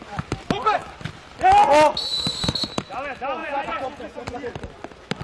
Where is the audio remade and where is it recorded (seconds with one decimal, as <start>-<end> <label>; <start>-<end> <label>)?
0.0-3.4 recorded; 3.4-4.2 remade; 4.2-5.2 recorded